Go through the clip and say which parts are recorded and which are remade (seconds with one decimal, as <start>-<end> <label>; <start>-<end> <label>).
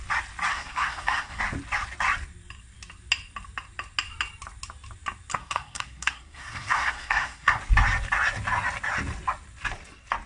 0.0-0.5 recorded; 0.5-1.4 remade; 1.4-5.3 recorded; 5.3-7.6 remade; 7.6-10.3 recorded